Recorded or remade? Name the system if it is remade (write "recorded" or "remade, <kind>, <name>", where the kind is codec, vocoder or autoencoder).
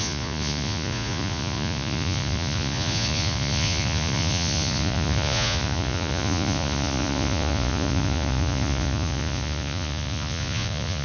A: remade, vocoder, Vocos